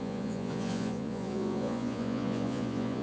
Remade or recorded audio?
remade